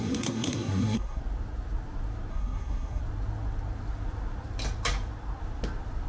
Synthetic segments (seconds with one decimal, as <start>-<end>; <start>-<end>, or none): 0.0-1.2; 2.3-3.0